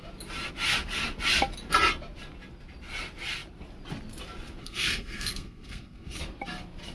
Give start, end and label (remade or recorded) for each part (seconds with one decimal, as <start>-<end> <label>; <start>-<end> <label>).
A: 0.0-4.6 recorded; 4.6-6.2 remade; 6.2-6.9 recorded